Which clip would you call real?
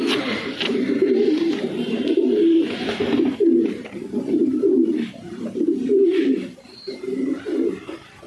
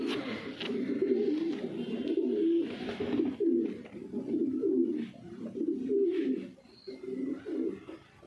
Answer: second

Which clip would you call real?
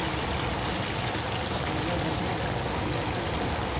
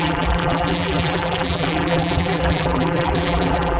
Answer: first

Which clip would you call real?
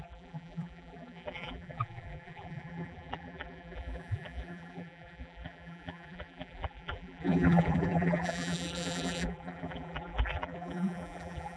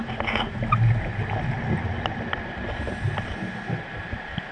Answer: second